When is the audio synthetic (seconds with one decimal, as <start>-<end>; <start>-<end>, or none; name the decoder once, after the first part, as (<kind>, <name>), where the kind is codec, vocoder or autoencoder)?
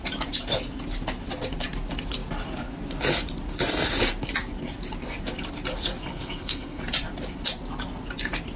6.1-6.8 (codec, SNAC)